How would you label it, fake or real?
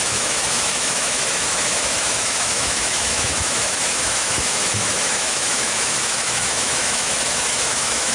fake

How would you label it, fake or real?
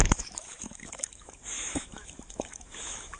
fake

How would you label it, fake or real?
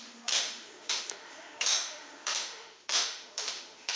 fake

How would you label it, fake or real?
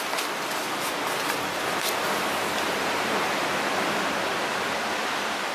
real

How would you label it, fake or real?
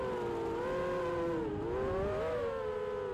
real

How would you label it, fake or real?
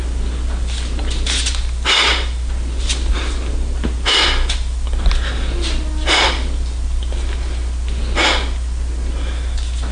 real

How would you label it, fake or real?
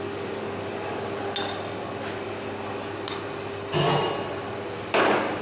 real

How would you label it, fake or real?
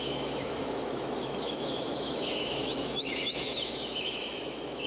fake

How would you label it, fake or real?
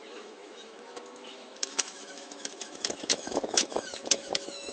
fake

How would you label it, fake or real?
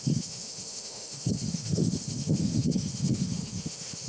fake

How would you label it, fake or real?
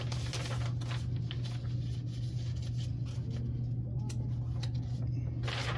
real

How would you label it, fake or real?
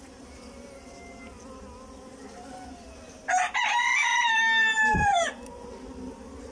real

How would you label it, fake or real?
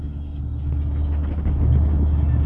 real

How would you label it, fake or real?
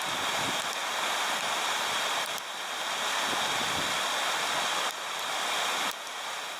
real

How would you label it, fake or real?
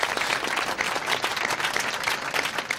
real